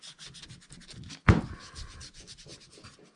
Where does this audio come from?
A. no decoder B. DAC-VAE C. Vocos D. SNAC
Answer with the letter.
A